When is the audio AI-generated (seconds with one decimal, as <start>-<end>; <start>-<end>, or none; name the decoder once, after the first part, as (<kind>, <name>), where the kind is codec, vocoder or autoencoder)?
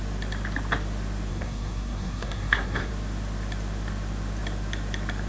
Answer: 1.3-2.9 (codec, SNAC)